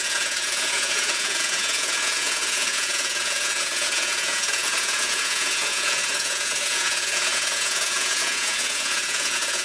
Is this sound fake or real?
fake